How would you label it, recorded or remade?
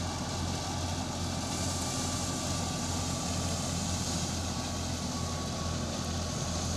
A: recorded